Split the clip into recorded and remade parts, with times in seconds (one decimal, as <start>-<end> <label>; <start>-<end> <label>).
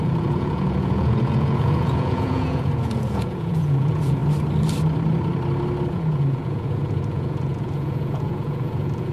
0.0-4.2 remade; 4.2-5.9 recorded; 5.9-9.1 remade